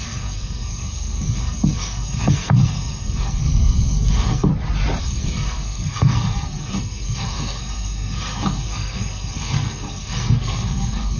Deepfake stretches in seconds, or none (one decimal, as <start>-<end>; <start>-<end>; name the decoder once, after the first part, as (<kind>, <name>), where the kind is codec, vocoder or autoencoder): 0.0-4.5 (codec, SNAC); 5.0-11.2